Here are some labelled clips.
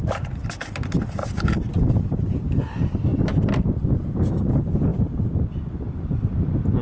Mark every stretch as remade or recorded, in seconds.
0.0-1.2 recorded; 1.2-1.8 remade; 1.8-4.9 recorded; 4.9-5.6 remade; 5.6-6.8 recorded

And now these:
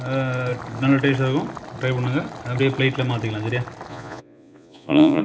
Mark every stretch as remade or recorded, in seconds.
0.0-3.9 recorded; 3.9-5.2 remade

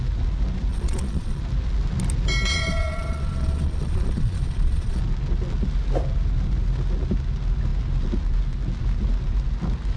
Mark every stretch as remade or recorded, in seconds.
0.0-0.7 recorded; 0.7-1.4 remade; 1.4-2.5 recorded; 2.5-5.0 remade; 5.0-10.0 recorded

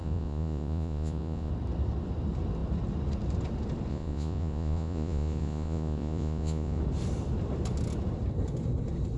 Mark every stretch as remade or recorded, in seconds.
0.0-1.5 remade; 1.5-3.9 recorded; 3.9-6.8 remade; 6.8-9.2 recorded

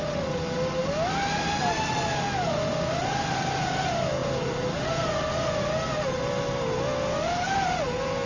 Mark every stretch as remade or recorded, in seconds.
0.0-8.3 recorded

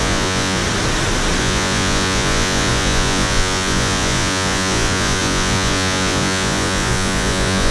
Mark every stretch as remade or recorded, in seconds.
0.0-0.6 remade; 0.6-1.4 recorded; 1.4-7.7 remade

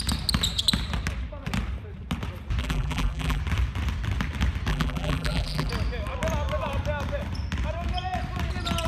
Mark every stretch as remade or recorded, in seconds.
0.0-2.6 recorded; 2.6-3.4 remade; 3.4-4.7 recorded; 4.7-5.7 remade; 5.7-8.9 recorded

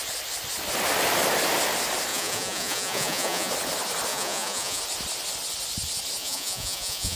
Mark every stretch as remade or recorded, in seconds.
0.0-2.1 recorded; 2.1-3.5 remade; 3.5-4.1 recorded; 4.1-4.8 remade; 4.8-6.2 recorded; 6.2-7.2 remade